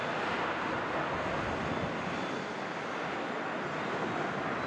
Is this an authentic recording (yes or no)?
yes